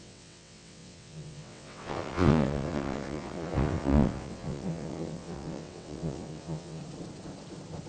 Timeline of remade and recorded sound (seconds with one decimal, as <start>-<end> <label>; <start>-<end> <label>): 0.0-6.8 remade; 6.8-7.9 recorded